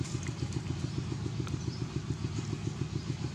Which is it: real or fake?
real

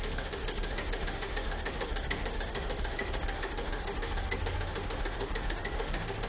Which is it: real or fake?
fake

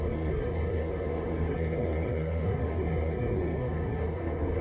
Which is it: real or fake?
fake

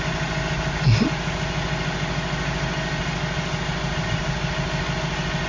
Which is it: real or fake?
real